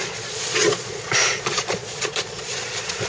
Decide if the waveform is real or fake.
fake